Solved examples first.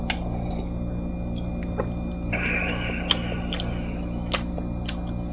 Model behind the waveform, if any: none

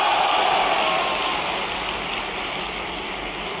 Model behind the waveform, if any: none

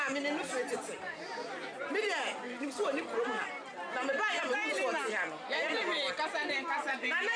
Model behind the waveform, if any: none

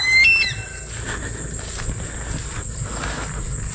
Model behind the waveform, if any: none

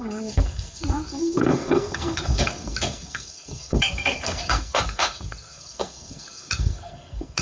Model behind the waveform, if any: codec, SNAC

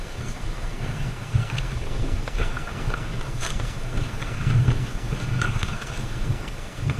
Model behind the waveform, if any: codec, SNAC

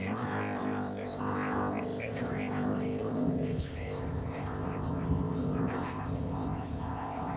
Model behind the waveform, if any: codec, ZipCodec